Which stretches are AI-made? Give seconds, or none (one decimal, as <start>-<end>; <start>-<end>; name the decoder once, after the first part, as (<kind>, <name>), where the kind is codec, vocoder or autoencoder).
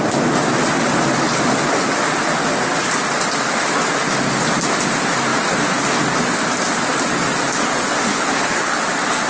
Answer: 8.1-8.8 (codec, HILCodec)